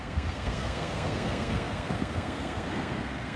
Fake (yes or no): yes